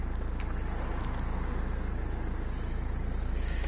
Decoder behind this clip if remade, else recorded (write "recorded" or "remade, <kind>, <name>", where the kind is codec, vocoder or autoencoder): recorded